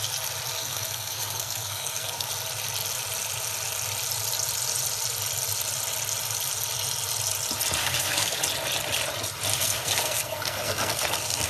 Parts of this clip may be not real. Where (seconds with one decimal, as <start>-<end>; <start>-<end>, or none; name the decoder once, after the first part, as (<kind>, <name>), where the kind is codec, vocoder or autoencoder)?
0.6-2.3 (codec, SNAC); 7.8-8.4; 9.5-11.5